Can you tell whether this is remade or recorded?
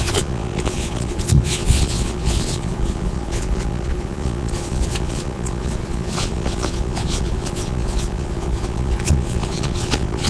remade